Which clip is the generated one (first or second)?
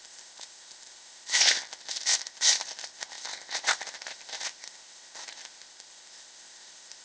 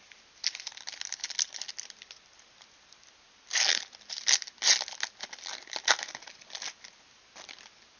first